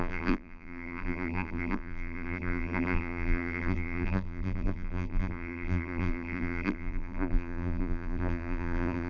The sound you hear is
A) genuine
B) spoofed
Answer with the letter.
B